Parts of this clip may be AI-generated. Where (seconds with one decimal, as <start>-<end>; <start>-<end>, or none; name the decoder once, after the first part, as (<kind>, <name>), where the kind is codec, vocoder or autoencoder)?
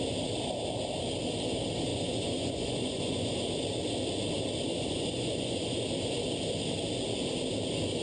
1.9-3.3 (vocoder, Vocos); 4.7-5.8